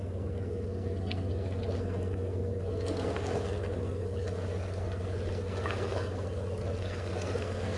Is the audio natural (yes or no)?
no